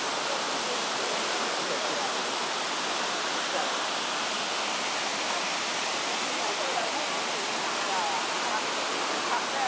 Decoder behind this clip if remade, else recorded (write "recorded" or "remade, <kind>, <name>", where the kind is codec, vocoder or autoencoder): recorded